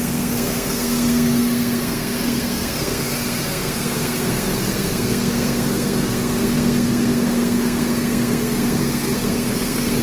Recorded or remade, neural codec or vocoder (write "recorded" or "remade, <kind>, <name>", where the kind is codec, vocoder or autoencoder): remade, codec, SNAC